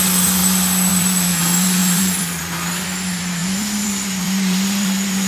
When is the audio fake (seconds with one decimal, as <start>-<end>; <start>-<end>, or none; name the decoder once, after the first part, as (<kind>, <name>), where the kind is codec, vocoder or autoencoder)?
0.0-0.4 (vocoder, BigVGAN v2); 0.9-5.3